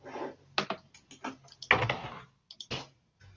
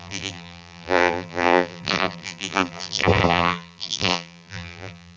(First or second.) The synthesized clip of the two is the second